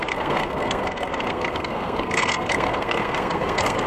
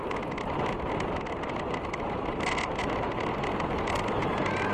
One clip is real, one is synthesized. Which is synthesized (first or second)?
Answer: first